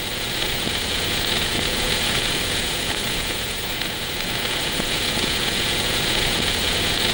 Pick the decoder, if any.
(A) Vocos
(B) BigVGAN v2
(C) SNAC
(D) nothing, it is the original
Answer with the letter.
A